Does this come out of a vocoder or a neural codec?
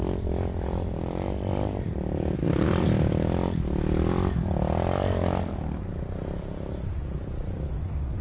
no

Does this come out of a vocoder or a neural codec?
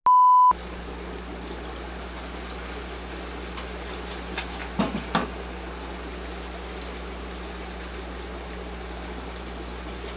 no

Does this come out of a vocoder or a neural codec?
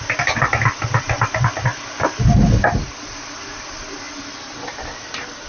no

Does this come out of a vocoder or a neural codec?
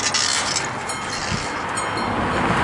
no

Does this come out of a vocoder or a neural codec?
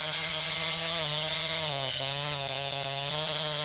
yes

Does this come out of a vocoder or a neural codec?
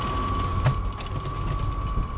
no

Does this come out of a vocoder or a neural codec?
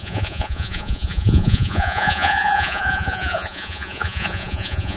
yes